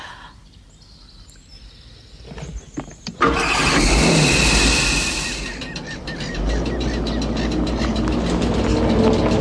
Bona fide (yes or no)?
yes